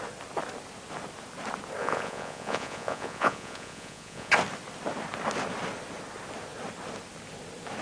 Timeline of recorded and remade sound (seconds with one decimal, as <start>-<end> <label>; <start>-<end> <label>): 0.0-1.8 recorded; 1.8-4.3 remade; 4.3-7.8 recorded